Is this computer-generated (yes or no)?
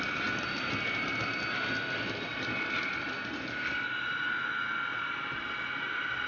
no